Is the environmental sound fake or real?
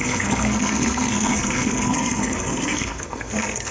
fake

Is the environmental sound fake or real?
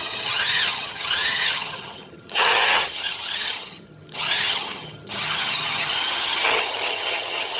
fake